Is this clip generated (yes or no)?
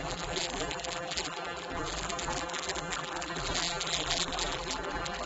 yes